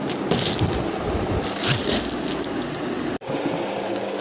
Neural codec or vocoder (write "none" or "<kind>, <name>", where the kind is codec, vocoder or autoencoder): none